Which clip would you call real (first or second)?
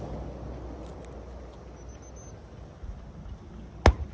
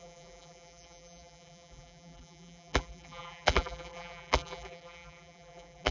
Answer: first